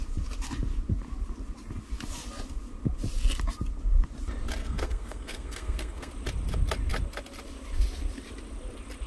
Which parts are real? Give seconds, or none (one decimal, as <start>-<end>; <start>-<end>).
0.0-4.6; 6.1-9.1